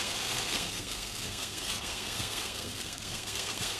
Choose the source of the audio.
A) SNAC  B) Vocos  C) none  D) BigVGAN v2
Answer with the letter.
A